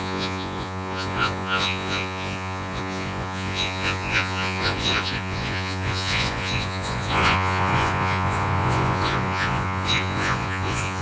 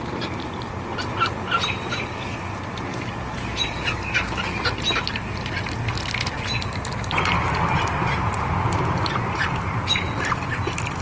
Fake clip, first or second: first